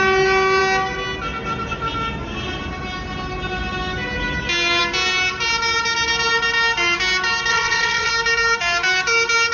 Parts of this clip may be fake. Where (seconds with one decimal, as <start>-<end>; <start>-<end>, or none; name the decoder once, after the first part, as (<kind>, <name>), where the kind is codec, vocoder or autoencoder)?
7.5-8.1 (vocoder, WaveNeXt)

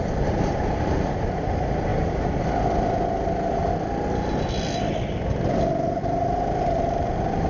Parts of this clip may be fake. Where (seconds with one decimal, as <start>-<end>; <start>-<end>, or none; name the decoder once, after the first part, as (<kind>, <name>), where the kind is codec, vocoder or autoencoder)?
none

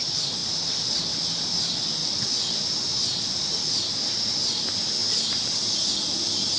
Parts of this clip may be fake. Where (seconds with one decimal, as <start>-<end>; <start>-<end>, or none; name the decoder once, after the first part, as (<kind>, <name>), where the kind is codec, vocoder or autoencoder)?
2.0-2.6 (vocoder, WaveNeXt)

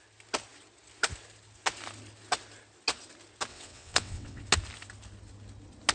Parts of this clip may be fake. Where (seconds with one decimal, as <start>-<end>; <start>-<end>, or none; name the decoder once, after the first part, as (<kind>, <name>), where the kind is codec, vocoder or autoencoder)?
3.5-4.4 (vocoder, WaveNeXt)

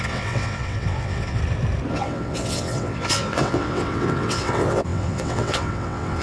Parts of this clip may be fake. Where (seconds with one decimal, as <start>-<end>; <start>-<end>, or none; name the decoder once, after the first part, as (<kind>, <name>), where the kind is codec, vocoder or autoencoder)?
0.0-1.4 (vocoder, WaveNeXt); 1.9-6.2

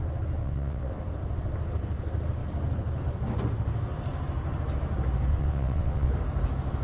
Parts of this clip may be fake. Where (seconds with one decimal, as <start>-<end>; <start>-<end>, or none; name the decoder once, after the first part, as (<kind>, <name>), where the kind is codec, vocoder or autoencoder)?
0.4-0.9 (vocoder, WaveNeXt); 5.3-6.1

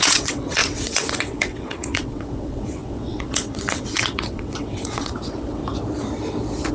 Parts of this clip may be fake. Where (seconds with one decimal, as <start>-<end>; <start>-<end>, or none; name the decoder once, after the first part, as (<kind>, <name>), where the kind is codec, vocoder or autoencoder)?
0.0-5.6 (vocoder, WaveNeXt)